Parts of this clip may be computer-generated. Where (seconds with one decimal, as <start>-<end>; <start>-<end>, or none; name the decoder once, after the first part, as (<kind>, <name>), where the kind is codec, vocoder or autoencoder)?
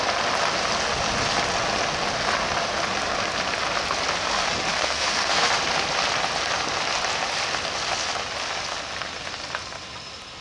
4.7-5.5 (codec, SNAC)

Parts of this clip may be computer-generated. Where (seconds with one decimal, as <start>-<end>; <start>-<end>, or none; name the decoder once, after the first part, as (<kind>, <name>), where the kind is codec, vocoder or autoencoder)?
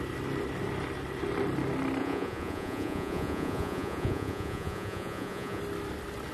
2.0-5.6 (vocoder, Vocos)